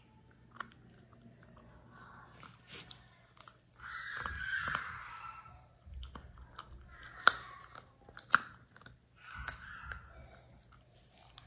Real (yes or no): yes